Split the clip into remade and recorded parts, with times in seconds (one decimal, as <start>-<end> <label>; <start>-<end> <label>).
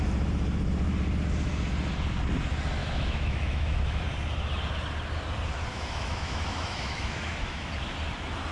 0.0-2.8 recorded; 2.8-4.0 remade; 4.0-5.7 recorded; 5.7-7.7 remade; 7.7-8.5 recorded